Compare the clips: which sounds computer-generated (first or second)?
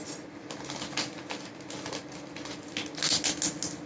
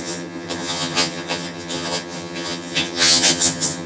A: second